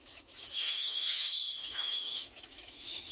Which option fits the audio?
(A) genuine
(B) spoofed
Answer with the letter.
B